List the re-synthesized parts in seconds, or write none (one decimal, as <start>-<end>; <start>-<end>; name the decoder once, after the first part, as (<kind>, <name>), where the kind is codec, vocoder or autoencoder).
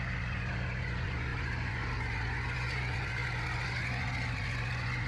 0.0-5.1 (vocoder, Vocos)